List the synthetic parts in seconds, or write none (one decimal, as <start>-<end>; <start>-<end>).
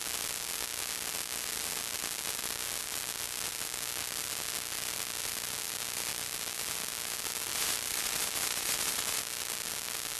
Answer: 7.5-9.2